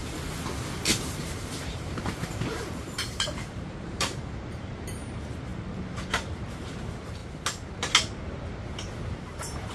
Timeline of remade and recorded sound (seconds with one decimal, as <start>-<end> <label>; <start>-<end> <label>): 0.0-1.0 recorded; 1.0-5.5 remade; 5.5-6.1 recorded; 6.1-7.2 remade; 7.2-9.1 recorded; 9.1-9.7 remade